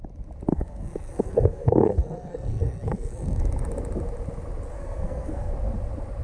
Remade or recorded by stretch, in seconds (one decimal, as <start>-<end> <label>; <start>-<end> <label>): 0.0-0.5 recorded; 0.5-3.4 remade; 3.4-4.7 recorded; 4.7-5.5 remade; 5.5-6.2 recorded